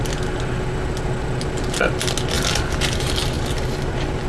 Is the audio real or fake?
real